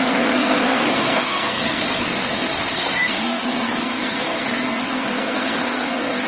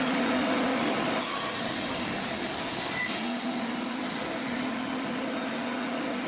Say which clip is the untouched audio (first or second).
second